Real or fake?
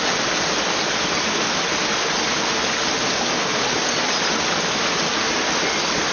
real